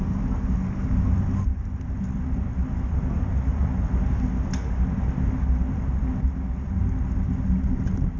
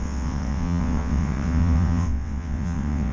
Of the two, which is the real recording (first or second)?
first